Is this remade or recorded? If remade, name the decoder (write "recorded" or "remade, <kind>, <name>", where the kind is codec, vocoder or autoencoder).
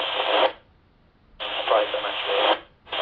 recorded